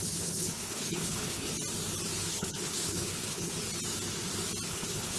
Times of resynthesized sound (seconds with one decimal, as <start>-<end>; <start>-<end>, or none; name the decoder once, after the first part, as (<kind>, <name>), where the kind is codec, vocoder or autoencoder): 0.0-1.5 (codec, HILCodec); 2.3-3.5; 4.7-5.2